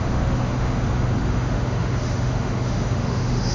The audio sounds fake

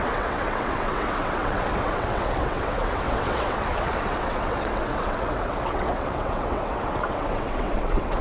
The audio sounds fake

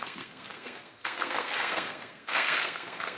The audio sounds fake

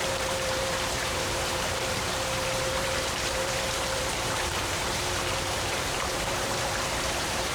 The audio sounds fake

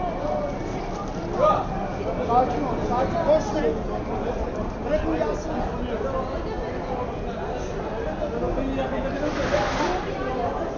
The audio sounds real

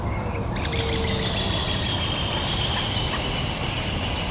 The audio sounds real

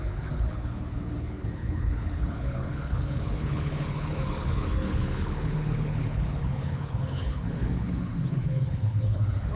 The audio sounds fake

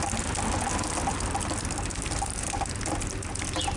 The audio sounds real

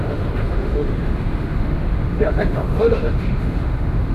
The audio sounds fake